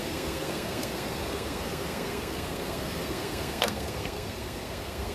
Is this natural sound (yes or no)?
no